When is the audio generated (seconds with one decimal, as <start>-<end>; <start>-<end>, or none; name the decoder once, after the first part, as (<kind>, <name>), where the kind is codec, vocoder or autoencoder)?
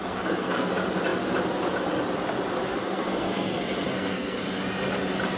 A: 0.0-0.7 (codec, SNAC); 2.7-4.4